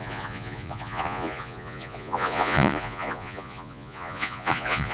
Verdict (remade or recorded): remade